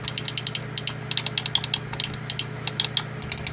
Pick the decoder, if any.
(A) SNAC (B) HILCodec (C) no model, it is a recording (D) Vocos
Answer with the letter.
C